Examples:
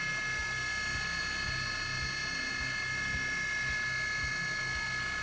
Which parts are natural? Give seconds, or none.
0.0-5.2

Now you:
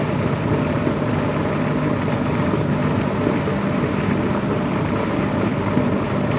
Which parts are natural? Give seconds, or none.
0.0-6.4

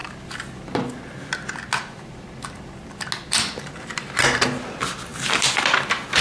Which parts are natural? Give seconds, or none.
0.0-6.2